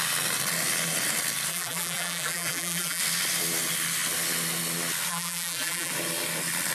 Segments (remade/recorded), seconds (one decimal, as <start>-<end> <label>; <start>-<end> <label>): 0.0-1.5 recorded; 1.5-3.0 remade; 3.0-5.1 recorded; 5.1-5.9 remade; 5.9-6.7 recorded